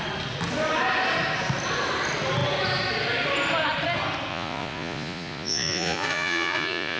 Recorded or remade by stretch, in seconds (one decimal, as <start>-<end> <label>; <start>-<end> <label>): 0.0-4.3 recorded; 4.3-7.0 remade